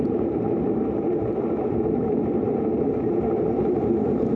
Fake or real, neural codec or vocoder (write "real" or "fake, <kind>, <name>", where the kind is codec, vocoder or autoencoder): fake, vocoder, BigVGAN v2